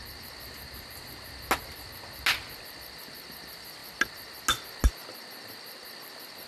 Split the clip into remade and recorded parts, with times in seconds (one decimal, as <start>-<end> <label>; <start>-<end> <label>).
0.0-6.5 recorded